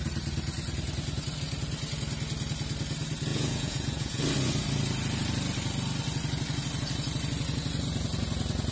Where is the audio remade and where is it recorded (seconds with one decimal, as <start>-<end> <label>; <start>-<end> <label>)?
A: 0.0-3.3 recorded; 3.3-4.2 remade; 4.2-8.7 recorded